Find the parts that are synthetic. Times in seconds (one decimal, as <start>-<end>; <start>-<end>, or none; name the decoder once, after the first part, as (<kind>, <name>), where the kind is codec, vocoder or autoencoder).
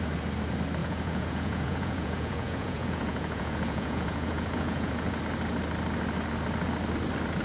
0.8-5.2 (vocoder, Vocos)